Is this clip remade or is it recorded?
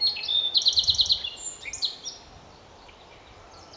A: recorded